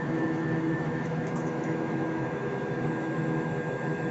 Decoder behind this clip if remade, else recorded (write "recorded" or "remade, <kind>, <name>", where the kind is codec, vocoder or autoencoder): remade, autoencoder, DAC-VAE